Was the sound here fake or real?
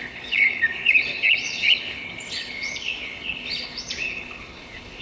fake